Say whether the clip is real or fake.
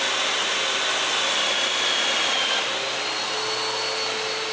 real